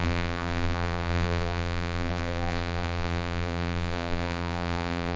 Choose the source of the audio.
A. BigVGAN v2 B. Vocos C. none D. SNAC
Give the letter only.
A